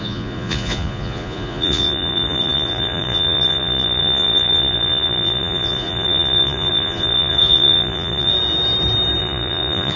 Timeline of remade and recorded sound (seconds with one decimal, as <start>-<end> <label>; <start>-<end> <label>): 0.0-8.3 remade; 8.3-9.2 recorded; 9.2-10.0 remade

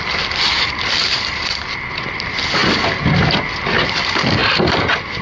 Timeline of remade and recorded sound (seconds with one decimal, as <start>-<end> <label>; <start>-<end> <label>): 0.0-5.2 recorded